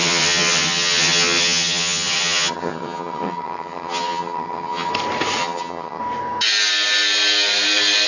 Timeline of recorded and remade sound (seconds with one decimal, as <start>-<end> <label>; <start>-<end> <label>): 0.0-4.9 remade; 4.9-5.4 recorded; 5.4-6.0 remade; 6.0-8.1 recorded